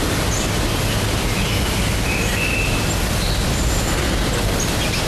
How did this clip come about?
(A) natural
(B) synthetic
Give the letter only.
A